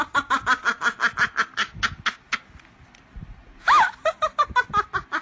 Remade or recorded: recorded